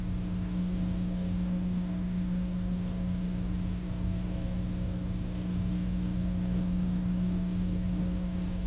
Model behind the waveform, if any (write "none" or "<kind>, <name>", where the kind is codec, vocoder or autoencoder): codec, DAC